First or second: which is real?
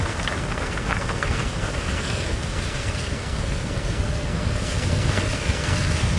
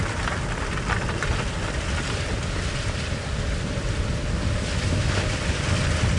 second